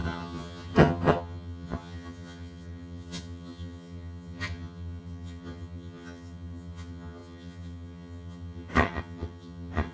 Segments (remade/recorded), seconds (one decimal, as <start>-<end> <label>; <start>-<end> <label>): 0.0-9.9 remade